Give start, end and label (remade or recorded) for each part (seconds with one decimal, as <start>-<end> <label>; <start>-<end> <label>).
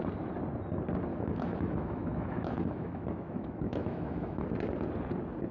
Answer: 0.0-1.1 recorded; 1.1-4.4 remade; 4.4-5.5 recorded